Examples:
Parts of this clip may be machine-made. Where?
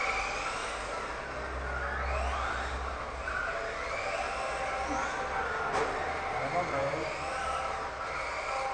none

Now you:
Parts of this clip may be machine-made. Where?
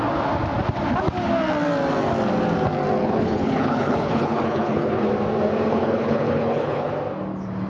3.0-5.1 (codec, HILCodec); 5.7-6.9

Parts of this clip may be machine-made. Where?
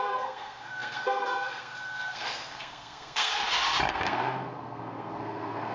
0.0-3.3 (codec, SNAC); 3.9-5.7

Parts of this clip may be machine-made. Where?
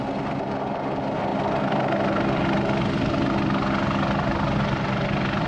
none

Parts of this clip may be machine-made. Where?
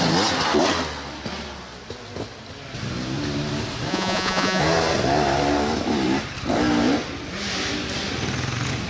3.9-4.6 (vocoder, Vocos)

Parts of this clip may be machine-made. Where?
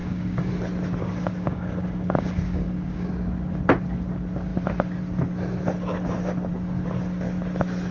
0.0-0.5 (codec, DAC); 1.0-3.1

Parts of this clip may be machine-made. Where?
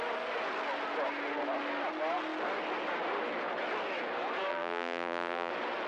4.5-5.5 (vocoder, BigVGAN v2)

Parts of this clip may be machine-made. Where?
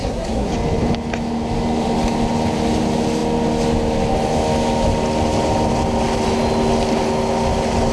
0.0-0.5 (codec, SNAC)